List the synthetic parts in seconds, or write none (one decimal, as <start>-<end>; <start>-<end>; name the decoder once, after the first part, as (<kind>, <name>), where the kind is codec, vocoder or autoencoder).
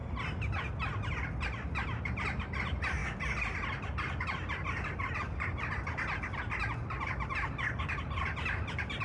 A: none